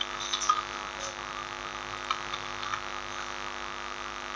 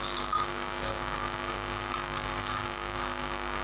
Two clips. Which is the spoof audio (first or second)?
second